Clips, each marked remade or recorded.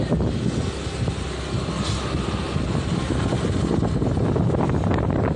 recorded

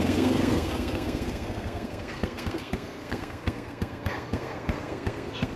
remade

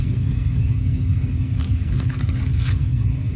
remade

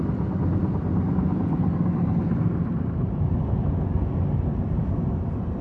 recorded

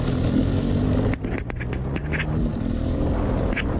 recorded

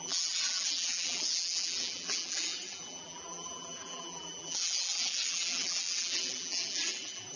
remade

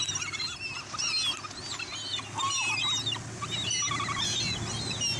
recorded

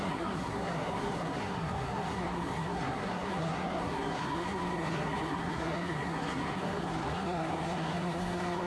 remade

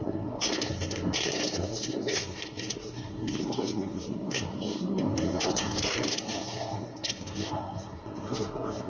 remade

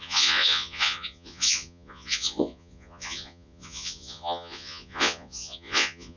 remade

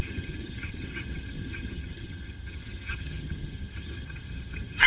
remade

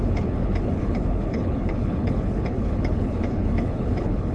remade